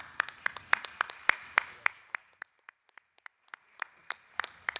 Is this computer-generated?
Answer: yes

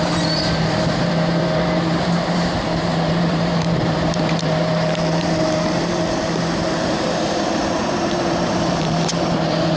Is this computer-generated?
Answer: yes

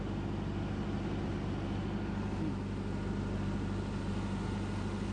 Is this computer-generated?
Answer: no